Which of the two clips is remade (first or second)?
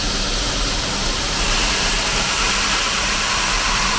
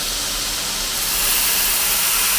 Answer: first